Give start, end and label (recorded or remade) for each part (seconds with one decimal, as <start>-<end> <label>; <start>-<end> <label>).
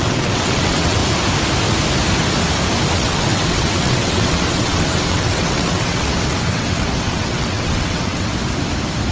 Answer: 0.0-1.0 remade; 1.0-2.9 recorded; 2.9-8.3 remade; 8.3-9.1 recorded